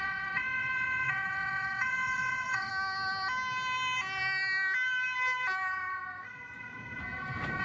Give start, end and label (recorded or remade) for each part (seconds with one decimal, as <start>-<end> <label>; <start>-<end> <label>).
0.0-2.7 remade; 2.7-7.6 recorded